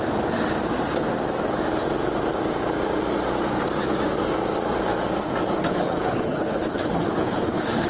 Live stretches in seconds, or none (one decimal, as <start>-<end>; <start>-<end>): 0.0-5.7